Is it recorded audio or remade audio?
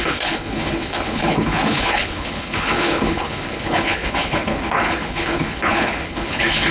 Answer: remade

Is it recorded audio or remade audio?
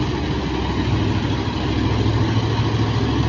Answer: recorded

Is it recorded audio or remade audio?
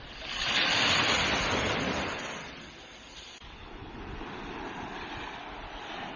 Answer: recorded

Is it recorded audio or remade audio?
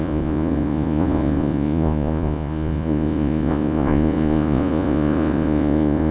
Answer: remade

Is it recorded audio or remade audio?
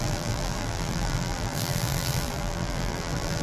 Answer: remade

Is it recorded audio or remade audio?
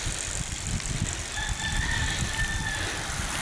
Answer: recorded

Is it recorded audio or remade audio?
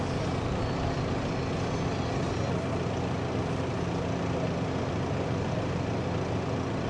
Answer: recorded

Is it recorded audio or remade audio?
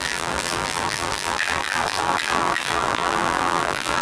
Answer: remade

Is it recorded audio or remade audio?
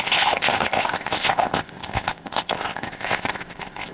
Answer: remade